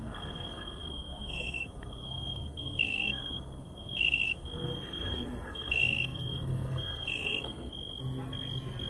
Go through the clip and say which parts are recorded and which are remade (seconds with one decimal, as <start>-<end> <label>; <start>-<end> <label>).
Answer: 0.0-7.7 remade; 7.7-8.9 recorded